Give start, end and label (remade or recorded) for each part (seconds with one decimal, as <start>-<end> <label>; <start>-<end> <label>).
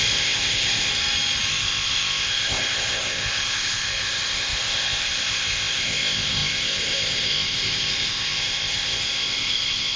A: 0.0-0.9 remade; 0.9-1.5 recorded; 1.5-10.0 remade